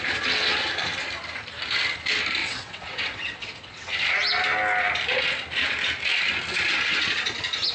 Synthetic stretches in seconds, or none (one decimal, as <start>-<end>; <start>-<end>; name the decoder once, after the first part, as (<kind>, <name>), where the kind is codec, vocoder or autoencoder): 2.4-3.9 (vocoder, WaveNeXt)